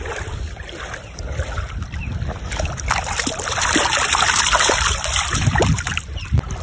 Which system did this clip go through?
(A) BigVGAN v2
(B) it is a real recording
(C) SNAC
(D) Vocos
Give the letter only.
A